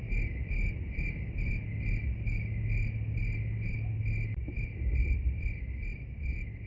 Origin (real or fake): real